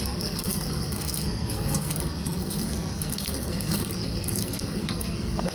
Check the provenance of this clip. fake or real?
fake